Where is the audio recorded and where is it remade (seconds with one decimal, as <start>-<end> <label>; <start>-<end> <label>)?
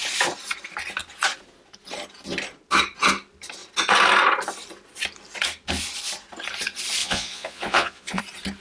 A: 0.0-7.0 recorded; 7.0-8.2 remade; 8.2-8.6 recorded